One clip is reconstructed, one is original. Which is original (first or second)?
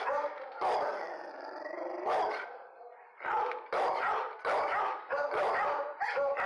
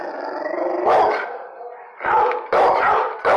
second